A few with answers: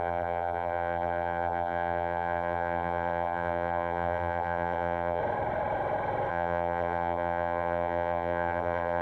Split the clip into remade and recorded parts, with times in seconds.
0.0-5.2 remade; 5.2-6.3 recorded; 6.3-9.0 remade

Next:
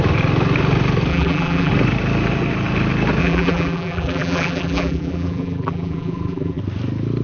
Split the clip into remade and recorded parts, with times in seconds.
0.0-1.1 recorded; 1.1-1.7 remade; 1.7-3.2 recorded; 3.2-6.6 remade; 6.6-7.2 recorded

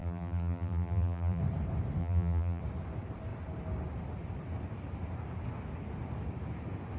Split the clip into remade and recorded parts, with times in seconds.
0.0-1.4 remade; 1.4-2.0 recorded; 2.0-2.6 remade; 2.6-7.0 recorded

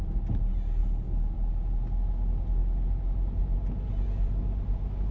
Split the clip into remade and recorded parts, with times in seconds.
0.0-5.1 recorded

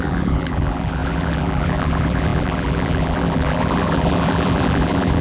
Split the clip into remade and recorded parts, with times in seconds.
0.0-5.2 remade